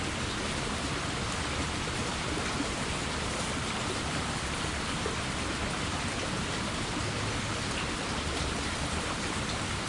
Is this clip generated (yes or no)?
no